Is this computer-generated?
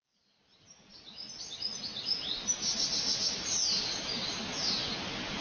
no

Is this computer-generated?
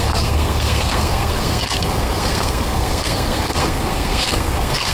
yes